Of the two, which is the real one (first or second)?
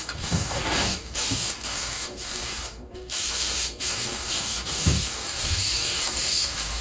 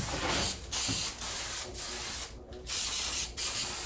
second